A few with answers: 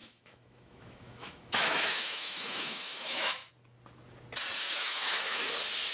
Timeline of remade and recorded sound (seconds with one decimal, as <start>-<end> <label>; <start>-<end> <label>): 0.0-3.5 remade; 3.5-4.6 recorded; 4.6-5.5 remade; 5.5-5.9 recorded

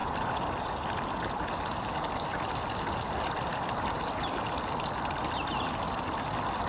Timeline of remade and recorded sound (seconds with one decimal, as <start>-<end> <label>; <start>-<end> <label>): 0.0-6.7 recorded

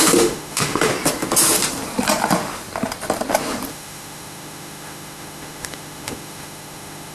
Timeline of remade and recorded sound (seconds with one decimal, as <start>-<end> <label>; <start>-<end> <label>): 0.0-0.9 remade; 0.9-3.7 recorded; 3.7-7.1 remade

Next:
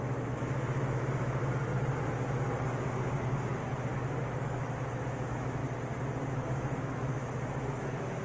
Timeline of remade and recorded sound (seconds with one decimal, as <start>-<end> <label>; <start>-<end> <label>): 0.0-1.4 remade; 1.4-4.0 recorded; 4.0-5.6 remade; 5.6-6.3 recorded; 6.3-8.2 remade